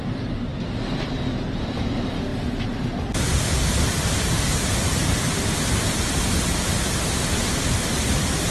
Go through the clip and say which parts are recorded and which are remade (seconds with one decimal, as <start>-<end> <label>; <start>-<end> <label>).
0.0-8.5 recorded